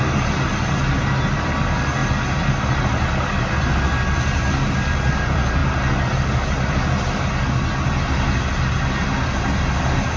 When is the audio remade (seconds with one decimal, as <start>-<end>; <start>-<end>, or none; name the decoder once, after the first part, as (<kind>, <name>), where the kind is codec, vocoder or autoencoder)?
none